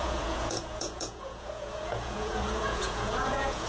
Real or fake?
fake